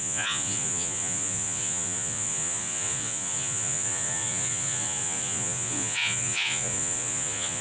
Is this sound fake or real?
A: fake